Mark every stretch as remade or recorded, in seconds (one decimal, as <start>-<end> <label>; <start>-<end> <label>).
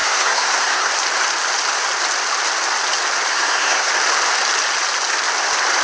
0.0-0.9 remade; 0.9-3.3 recorded; 3.3-3.9 remade; 3.9-5.8 recorded